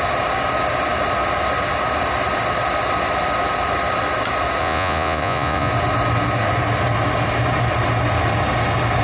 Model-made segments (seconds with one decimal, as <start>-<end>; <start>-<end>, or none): 4.6-5.7